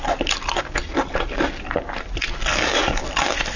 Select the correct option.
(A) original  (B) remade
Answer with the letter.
A